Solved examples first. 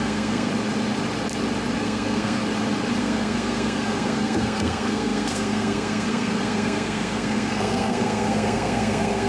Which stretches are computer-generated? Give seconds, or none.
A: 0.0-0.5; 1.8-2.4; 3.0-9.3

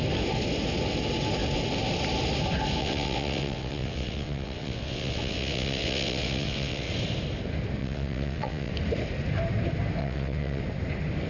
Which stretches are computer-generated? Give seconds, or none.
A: 2.8-6.9; 7.8-8.7; 10.0-10.6

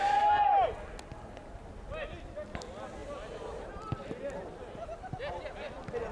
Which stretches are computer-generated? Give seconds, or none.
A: none